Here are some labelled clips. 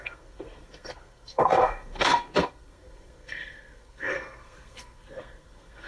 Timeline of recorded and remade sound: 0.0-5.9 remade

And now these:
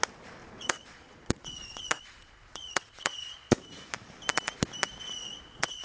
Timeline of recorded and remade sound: 0.0-0.4 recorded; 0.4-3.5 remade; 3.5-5.2 recorded; 5.2-5.8 remade

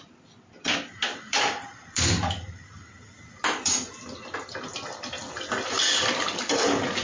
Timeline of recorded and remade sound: 0.0-1.3 recorded; 1.3-5.5 remade; 5.5-7.0 recorded

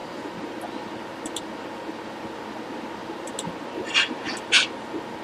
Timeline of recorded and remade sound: 0.0-5.2 recorded

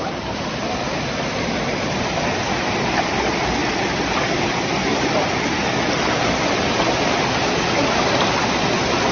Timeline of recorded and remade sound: 0.0-9.1 recorded

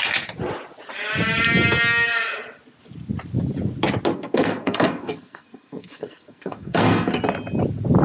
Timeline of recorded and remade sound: 0.0-4.1 recorded; 4.1-7.2 remade; 7.2-8.0 recorded